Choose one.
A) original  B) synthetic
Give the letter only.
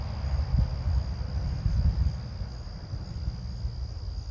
A